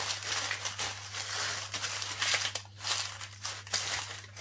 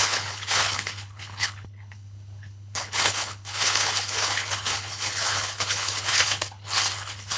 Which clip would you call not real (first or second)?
second